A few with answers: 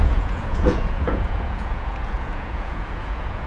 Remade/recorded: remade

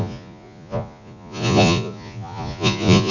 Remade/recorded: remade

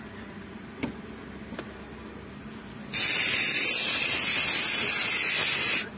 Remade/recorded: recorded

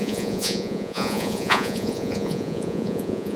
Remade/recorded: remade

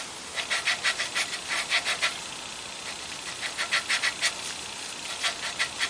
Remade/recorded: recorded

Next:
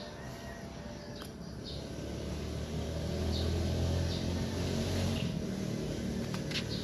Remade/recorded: recorded